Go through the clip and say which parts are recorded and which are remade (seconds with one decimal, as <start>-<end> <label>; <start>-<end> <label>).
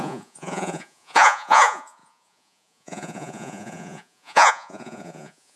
0.0-5.6 remade